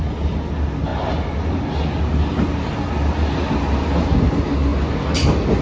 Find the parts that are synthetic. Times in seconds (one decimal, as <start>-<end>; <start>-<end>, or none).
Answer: none